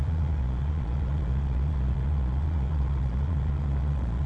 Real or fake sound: fake